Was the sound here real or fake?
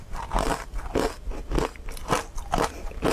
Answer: real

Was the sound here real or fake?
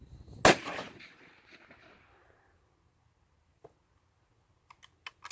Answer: real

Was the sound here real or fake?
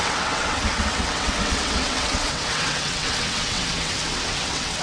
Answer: fake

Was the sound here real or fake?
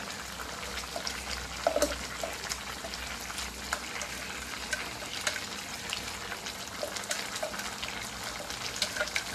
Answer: real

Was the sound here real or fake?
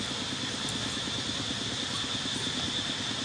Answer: real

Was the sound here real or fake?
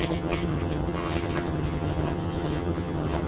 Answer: fake